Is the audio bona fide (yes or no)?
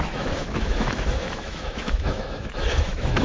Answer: no